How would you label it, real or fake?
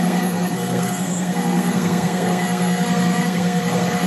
fake